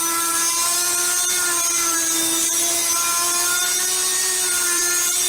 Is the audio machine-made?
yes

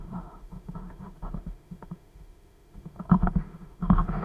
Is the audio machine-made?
yes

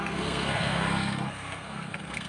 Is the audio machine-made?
yes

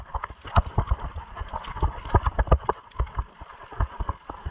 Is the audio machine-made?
no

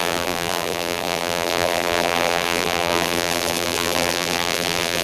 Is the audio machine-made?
yes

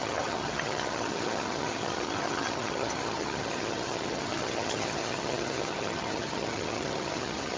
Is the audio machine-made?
yes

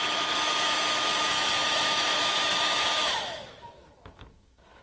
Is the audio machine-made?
yes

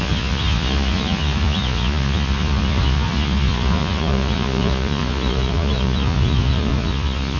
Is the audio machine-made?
yes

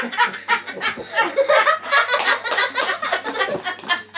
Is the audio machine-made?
no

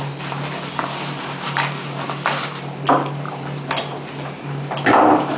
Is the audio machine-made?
no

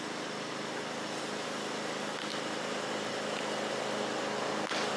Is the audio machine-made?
no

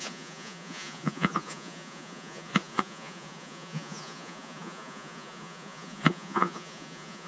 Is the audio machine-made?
yes